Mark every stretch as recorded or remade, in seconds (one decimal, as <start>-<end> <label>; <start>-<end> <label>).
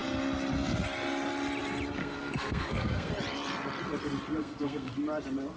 0.0-2.0 recorded; 2.0-3.1 remade; 3.1-4.4 recorded; 4.4-4.9 remade; 4.9-5.6 recorded